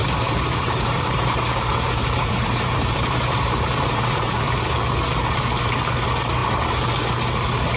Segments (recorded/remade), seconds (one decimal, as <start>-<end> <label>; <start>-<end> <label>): 0.0-4.4 remade; 4.4-7.8 recorded